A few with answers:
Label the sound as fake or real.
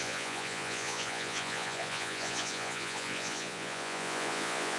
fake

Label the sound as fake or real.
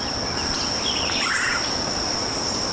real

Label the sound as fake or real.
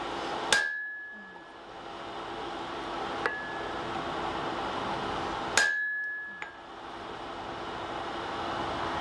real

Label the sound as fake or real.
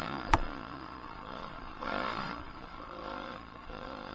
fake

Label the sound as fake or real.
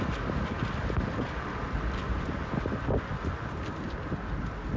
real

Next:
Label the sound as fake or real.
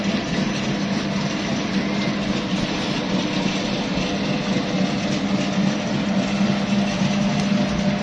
real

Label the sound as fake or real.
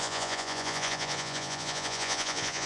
fake